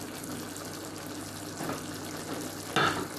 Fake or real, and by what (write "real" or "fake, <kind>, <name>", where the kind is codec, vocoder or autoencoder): real